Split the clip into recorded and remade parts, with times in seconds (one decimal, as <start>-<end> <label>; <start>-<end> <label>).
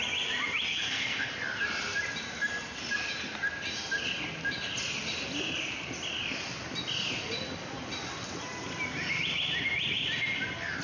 0.0-0.7 recorded; 0.7-1.3 remade; 1.3-10.8 recorded